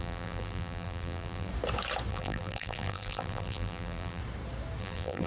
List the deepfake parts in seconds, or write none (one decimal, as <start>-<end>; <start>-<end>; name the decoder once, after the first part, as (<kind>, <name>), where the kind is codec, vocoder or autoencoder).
0.0-1.5 (vocoder, BigVGAN v2); 2.1-4.2; 4.8-5.3